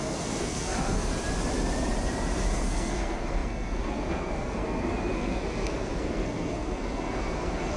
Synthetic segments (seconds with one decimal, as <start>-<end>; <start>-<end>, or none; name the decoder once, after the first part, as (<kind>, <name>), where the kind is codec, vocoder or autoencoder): 0.0-1.1 (codec, SNAC); 2.5-7.8

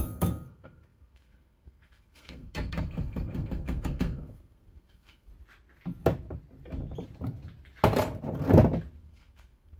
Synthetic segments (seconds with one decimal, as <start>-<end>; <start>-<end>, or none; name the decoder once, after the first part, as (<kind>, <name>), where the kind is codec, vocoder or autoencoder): 0.0-5.3 (codec, SNAC); 9.0-9.8

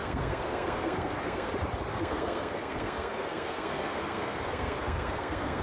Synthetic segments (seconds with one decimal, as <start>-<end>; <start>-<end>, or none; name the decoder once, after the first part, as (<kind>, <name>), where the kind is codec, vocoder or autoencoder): 0.0-1.5 (codec, SNAC); 1.9-5.6

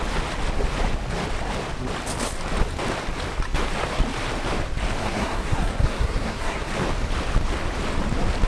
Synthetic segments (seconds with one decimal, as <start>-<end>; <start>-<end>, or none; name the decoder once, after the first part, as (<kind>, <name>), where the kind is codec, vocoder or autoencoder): 5.0-6.7 (codec, SNAC)

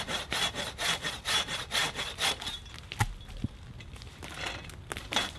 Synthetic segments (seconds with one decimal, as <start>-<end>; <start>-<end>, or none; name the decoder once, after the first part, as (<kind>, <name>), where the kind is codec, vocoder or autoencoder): none

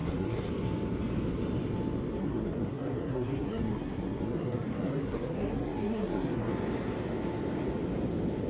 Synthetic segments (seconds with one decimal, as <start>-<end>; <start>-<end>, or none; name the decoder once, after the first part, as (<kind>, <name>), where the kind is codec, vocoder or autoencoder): 0.0-0.5 (codec, SNAC); 2.2-6.5